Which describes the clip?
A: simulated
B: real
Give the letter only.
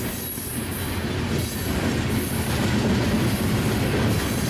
B